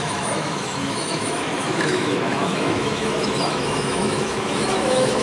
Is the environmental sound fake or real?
fake